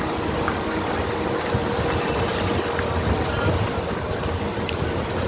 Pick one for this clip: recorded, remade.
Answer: recorded